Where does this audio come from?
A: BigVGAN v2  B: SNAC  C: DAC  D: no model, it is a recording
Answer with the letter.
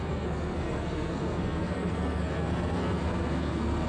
B